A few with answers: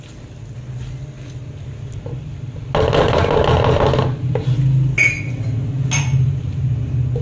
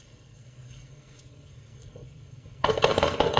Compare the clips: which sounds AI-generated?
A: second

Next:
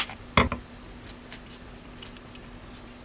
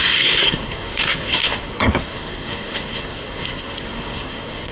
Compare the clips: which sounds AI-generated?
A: second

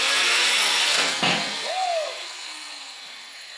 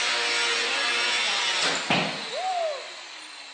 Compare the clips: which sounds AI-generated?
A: first